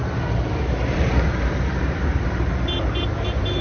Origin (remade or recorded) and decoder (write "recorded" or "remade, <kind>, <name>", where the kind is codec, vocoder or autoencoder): remade, vocoder, BigVGAN v2